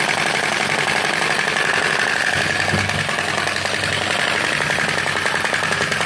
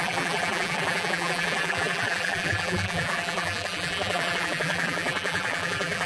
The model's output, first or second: second